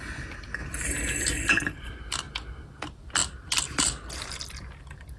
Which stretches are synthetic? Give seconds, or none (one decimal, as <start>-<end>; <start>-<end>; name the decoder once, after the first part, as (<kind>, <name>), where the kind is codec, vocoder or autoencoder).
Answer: none